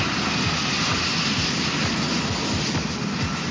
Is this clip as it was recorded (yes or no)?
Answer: yes